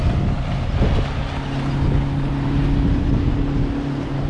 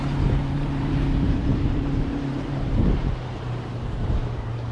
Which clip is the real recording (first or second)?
first